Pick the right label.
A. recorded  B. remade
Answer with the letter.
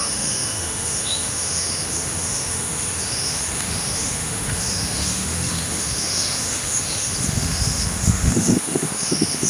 B